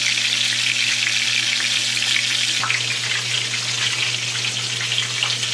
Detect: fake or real real